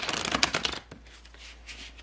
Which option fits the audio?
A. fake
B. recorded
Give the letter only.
B